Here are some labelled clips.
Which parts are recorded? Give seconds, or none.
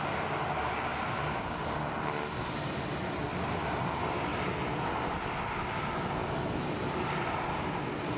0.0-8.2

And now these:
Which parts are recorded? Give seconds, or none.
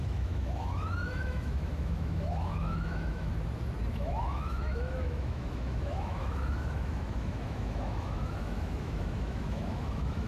3.3-3.9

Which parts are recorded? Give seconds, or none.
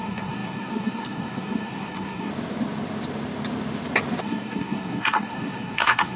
2.3-4.2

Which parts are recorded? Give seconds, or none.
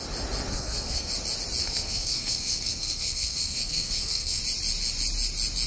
0.0-0.5; 1.1-1.6; 4.4-5.7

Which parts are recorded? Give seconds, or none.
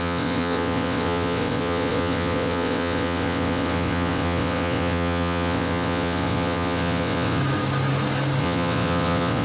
7.4-8.4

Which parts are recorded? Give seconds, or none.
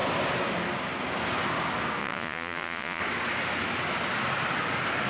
0.0-2.0; 3.0-5.1